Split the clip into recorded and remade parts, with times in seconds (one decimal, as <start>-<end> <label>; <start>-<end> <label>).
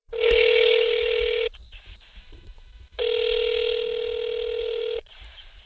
0.0-3.0 remade; 3.0-4.6 recorded; 4.6-5.7 remade